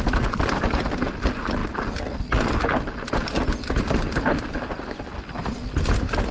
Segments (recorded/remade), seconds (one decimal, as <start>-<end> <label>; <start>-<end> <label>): 0.0-6.3 recorded